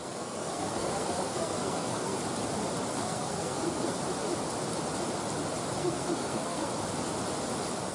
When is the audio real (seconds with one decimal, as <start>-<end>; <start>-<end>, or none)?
2.2-2.9; 4.0-5.8; 6.7-7.9